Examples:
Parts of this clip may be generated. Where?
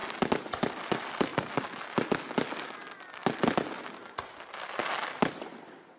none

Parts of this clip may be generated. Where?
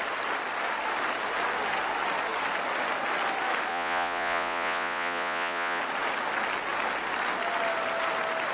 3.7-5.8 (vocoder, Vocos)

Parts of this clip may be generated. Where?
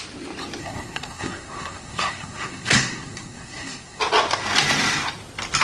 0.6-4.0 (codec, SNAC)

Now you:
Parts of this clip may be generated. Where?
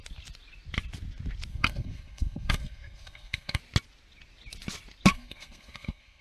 1.5-3.6 (codec, SNAC); 5.1-6.2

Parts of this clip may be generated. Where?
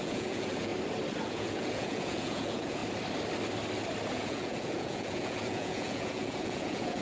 0.0-0.7 (vocoder, Vocos); 1.2-2.8; 4.1-7.0